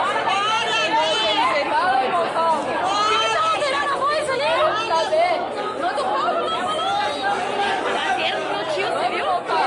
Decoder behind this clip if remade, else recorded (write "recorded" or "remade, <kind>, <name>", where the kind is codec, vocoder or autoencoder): recorded